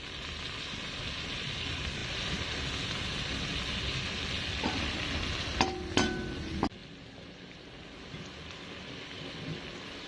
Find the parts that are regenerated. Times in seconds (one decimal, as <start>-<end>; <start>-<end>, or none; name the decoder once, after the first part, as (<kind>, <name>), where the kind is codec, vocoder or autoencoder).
none